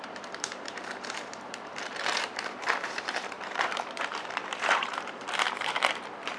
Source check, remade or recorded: remade